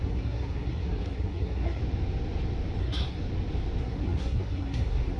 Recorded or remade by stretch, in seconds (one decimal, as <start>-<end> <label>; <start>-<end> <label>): 0.0-1.8 remade; 1.8-2.8 recorded; 2.8-3.2 remade; 3.2-3.8 recorded; 3.8-5.2 remade